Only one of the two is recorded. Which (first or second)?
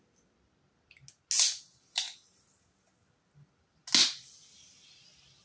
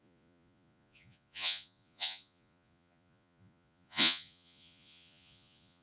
first